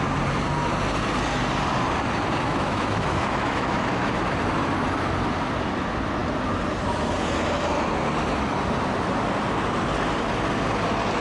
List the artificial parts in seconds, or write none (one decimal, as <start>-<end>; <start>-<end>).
2.5-4.1